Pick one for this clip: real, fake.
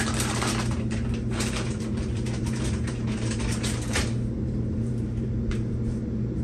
fake